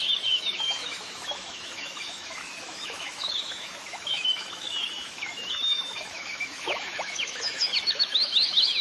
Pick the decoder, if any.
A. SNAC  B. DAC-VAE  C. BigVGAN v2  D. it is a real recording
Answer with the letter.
B